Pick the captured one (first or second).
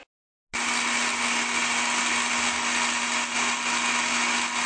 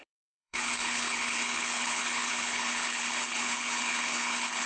first